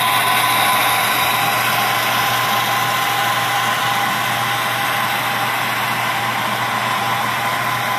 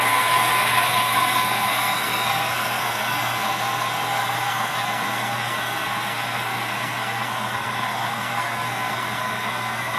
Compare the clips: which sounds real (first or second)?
first